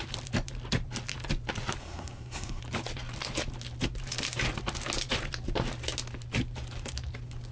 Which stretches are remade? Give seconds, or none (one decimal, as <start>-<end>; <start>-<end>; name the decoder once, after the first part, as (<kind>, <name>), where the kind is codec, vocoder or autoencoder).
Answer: 1.8-2.6 (codec, SNAC)